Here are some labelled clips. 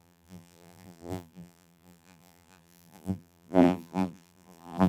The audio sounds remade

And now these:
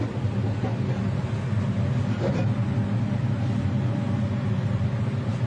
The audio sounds recorded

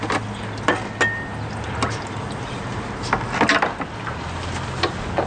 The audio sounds recorded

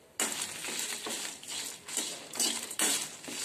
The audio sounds recorded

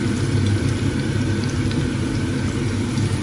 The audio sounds remade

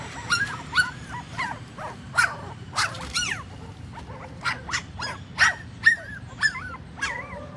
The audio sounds remade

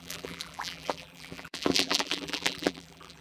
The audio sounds remade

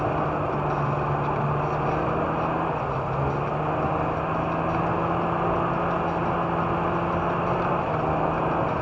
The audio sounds recorded